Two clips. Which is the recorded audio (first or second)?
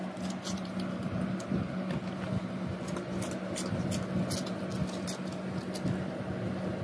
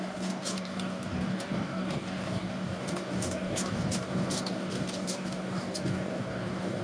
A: first